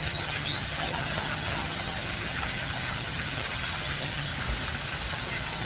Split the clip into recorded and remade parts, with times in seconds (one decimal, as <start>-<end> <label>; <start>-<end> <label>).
0.0-4.3 remade; 4.3-5.1 recorded; 5.1-5.7 remade